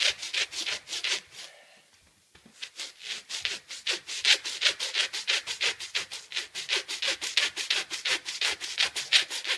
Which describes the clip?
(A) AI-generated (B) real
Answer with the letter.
B